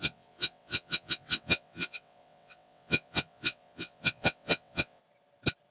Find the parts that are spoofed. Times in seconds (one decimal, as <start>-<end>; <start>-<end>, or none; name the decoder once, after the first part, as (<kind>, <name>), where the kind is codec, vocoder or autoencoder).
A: 0.0-5.0 (vocoder, WaveNeXt)